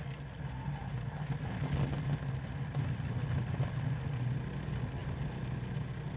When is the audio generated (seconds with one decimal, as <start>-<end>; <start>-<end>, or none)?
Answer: none